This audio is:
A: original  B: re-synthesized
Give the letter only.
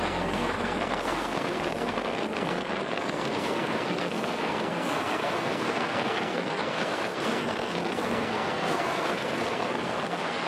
B